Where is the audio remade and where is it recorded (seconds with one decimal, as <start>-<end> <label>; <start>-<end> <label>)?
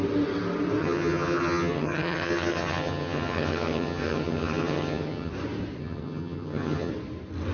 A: 0.0-0.8 recorded; 0.8-5.3 remade; 5.3-5.8 recorded; 5.8-6.9 remade; 6.9-7.5 recorded